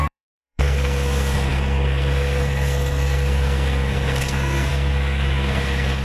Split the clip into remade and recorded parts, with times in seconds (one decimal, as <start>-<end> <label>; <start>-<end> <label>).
0.0-6.0 remade